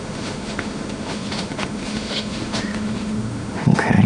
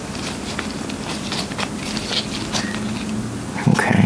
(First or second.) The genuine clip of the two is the second